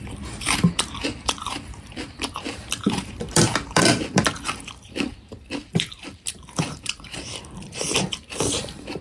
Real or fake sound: fake